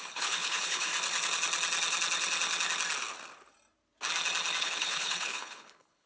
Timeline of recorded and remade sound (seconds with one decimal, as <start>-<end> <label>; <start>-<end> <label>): 0.0-0.9 remade; 0.9-4.6 recorded; 4.6-6.1 remade